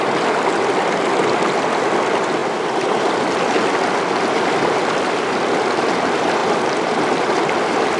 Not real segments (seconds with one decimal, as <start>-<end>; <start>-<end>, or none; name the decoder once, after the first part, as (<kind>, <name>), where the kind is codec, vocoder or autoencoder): none